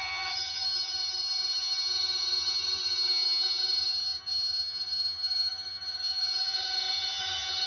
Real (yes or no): no